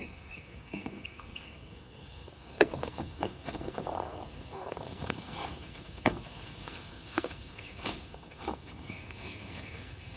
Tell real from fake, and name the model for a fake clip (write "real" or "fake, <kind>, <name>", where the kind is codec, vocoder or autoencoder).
fake, codec, SNAC